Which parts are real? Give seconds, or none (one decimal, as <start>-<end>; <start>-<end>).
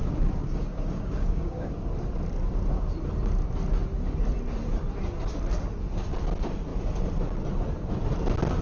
1.9-8.6